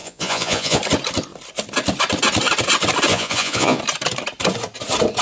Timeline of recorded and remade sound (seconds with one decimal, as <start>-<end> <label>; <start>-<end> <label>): 0.0-0.8 remade; 0.8-3.1 recorded; 3.1-3.8 remade; 3.8-5.2 recorded